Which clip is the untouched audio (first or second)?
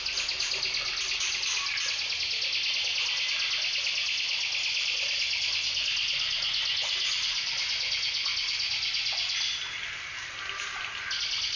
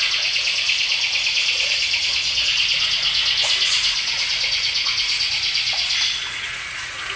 first